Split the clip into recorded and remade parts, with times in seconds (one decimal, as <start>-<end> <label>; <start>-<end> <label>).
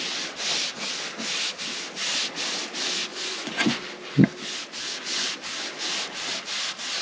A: 0.0-3.1 recorded; 3.1-3.8 remade; 3.8-7.0 recorded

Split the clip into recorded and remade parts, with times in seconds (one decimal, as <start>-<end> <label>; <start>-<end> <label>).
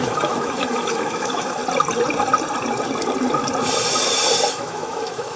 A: 0.0-1.6 remade; 1.6-4.5 recorded; 4.5-5.4 remade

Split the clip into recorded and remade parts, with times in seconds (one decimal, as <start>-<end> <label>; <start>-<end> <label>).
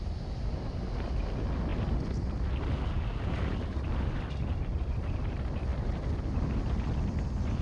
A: 0.0-7.6 recorded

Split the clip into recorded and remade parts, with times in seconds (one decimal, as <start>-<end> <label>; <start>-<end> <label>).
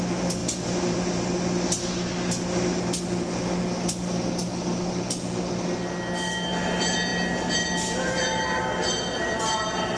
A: 0.0-10.0 recorded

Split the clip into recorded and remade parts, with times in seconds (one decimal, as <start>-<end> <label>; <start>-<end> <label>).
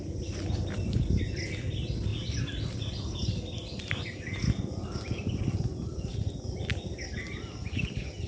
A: 0.0-8.3 recorded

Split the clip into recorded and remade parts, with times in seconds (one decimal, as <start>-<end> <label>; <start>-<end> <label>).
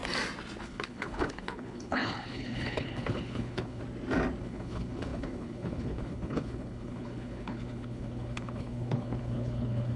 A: 0.0-0.6 recorded; 0.6-3.8 remade; 3.8-4.4 recorded; 4.4-10.0 remade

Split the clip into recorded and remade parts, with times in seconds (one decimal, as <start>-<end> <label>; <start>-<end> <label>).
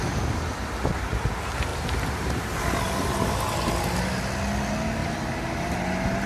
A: 0.0-1.7 recorded; 1.7-2.6 remade; 2.6-5.0 recorded; 5.0-5.8 remade; 5.8-6.3 recorded